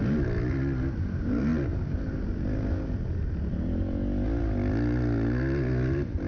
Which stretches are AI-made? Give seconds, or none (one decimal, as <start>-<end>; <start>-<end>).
none